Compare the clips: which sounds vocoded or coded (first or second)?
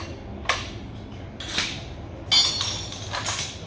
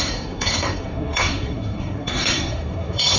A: second